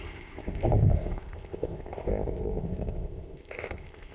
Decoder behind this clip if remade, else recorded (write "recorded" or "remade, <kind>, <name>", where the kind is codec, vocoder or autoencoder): remade, codec, ZipCodec